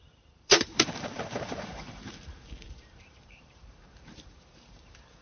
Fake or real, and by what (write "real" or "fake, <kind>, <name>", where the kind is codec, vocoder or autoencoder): fake, vocoder, BigVGAN v2